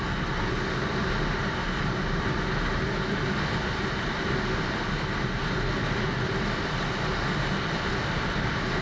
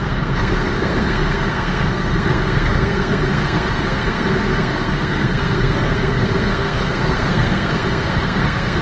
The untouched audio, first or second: first